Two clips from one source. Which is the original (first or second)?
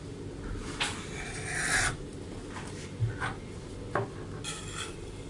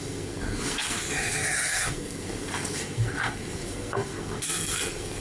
first